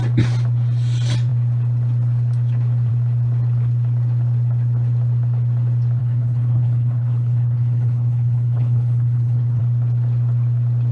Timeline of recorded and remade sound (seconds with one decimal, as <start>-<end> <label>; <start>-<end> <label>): 0.0-6.0 recorded; 6.0-9.6 remade; 9.6-10.9 recorded